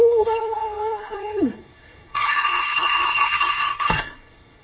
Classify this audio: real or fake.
fake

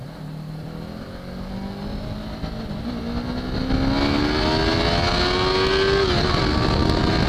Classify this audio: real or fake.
real